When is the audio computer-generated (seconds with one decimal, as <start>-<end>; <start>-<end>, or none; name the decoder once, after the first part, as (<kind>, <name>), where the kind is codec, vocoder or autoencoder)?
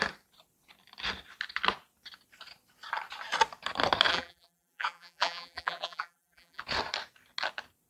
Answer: 4.1-6.6 (vocoder, BigVGAN v2)